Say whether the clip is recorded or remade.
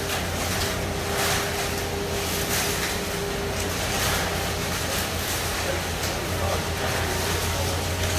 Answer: recorded